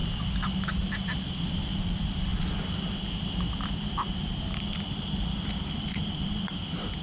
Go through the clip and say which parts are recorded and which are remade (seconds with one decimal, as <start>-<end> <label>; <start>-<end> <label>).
0.0-7.0 recorded